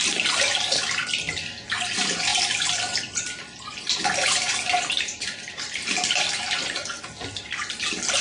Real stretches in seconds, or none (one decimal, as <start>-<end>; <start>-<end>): 0.0-2.3; 7.0-8.2